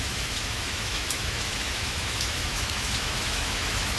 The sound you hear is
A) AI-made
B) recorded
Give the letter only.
A